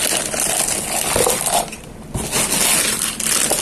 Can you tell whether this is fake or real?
real